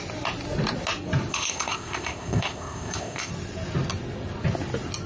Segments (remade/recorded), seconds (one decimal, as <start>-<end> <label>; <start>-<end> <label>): 0.0-1.3 recorded; 1.3-3.3 remade; 3.3-5.1 recorded